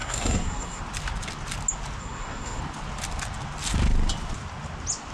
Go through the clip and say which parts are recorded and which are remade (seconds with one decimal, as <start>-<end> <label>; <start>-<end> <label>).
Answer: 0.0-0.8 remade; 0.8-2.0 recorded; 2.0-2.6 remade; 2.6-5.1 recorded